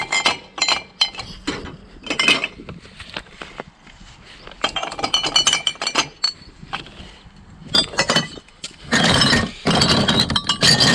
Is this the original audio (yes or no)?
yes